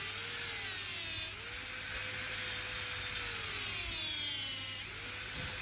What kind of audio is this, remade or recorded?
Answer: recorded